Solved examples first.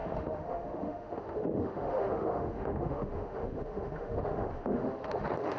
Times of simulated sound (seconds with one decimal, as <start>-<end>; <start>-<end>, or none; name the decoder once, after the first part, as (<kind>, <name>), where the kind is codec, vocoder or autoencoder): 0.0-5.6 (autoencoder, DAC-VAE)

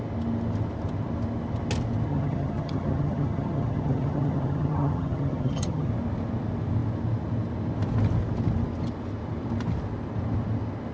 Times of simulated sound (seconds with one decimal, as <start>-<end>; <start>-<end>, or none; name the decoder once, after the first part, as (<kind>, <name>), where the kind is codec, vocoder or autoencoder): 2.1-5.9 (vocoder, HiFi-GAN)

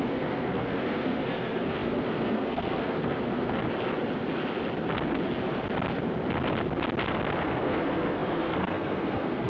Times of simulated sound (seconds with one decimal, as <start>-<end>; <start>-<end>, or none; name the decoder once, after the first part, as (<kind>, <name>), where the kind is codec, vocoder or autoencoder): 0.0-3.6 (codec, SNAC); 7.4-9.5

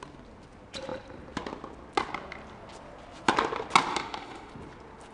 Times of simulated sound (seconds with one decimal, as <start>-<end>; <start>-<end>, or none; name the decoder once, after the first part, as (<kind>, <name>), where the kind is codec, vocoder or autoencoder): 3.9-4.5 (autoencoder, DAC-VAE)

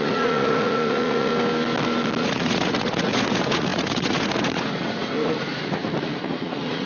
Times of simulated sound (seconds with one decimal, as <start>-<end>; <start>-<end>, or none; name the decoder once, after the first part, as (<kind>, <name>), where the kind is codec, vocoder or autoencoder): 0.0-1.3 (vocoder, Vocos); 2.2-6.9

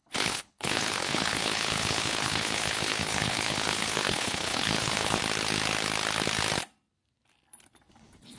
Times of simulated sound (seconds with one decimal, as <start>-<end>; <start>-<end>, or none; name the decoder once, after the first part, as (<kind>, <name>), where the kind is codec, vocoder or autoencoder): 0.0-5.2 (codec, HILCodec); 7.9-8.4